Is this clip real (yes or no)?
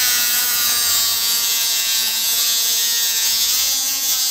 no